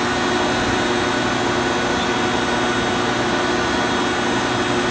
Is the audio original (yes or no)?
yes